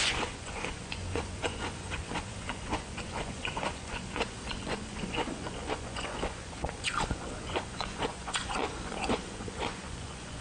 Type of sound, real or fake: fake